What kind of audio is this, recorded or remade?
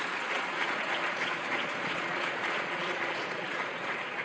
remade